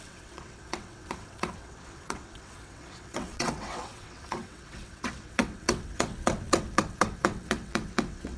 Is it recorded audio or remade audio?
remade